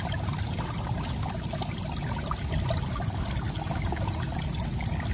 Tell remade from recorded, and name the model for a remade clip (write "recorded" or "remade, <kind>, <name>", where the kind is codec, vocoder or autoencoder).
recorded